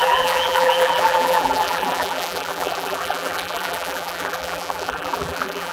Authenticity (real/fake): fake